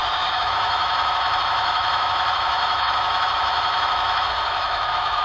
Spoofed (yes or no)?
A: yes